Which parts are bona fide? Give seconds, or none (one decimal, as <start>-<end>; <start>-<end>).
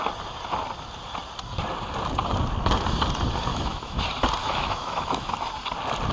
0.0-3.5; 4.0-4.4; 5.4-6.1